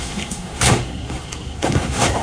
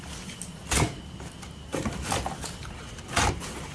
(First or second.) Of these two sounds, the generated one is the first